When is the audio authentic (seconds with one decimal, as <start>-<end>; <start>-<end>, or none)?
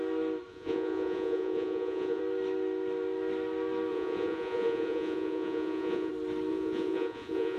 0.0-0.5; 2.2-3.9; 6.1-6.5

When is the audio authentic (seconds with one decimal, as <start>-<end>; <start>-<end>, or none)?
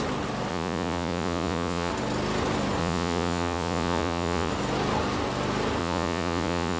0.0-0.5; 1.9-2.8; 4.5-5.8